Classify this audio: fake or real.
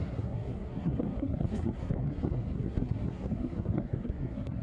fake